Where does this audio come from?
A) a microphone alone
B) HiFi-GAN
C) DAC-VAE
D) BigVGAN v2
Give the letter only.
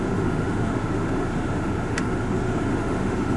C